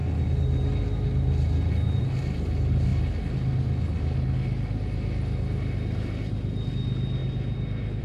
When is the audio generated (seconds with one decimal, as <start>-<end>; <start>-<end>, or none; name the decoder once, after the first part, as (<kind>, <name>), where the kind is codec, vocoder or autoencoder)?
none